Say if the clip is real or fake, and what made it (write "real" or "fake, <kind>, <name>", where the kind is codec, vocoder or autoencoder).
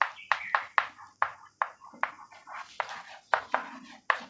real